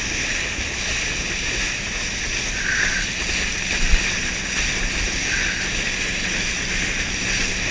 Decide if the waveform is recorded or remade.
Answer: recorded